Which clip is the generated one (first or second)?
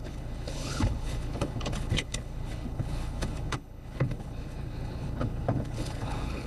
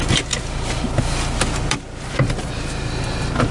first